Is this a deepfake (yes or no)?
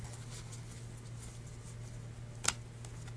no